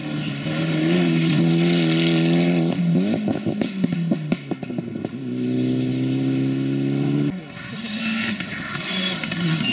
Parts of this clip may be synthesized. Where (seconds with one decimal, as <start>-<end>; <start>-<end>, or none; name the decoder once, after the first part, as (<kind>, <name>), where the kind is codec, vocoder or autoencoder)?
none

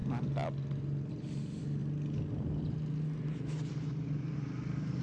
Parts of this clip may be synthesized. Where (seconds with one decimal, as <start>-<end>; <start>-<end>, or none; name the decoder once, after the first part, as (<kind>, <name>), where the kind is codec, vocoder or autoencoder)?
none